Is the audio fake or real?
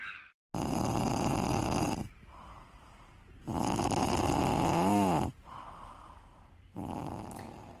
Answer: real